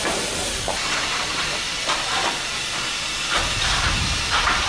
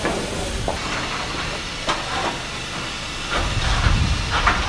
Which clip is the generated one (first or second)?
first